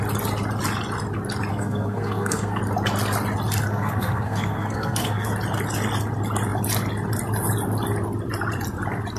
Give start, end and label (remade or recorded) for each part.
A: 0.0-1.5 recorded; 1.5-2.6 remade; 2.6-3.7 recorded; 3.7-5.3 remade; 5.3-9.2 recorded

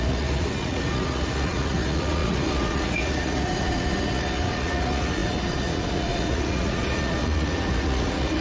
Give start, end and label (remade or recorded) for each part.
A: 0.0-8.4 remade

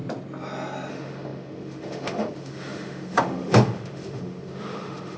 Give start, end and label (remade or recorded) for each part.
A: 0.0-0.9 recorded; 0.9-5.2 remade